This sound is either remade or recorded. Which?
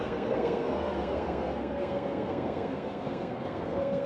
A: remade